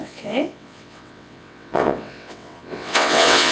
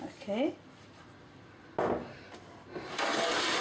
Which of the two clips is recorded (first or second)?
second